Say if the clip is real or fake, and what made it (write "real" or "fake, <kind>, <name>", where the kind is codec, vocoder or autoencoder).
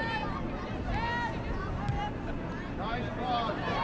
real